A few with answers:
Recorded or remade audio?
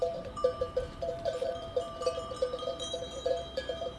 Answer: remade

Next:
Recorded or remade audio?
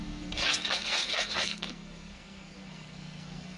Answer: remade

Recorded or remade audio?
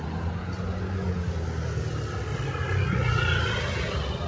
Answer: recorded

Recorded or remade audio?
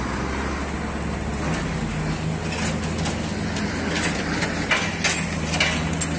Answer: recorded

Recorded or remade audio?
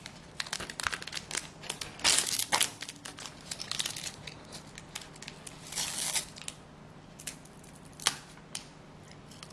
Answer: recorded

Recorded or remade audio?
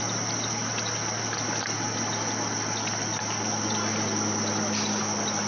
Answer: recorded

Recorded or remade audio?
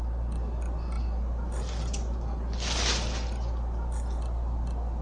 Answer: recorded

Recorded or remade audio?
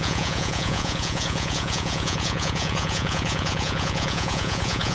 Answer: remade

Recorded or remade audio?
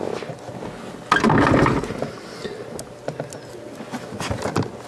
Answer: recorded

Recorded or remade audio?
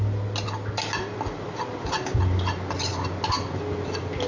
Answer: recorded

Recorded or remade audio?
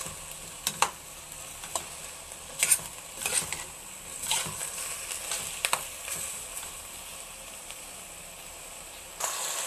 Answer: recorded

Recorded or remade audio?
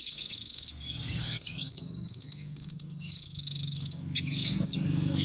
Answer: remade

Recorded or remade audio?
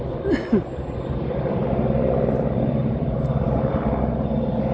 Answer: remade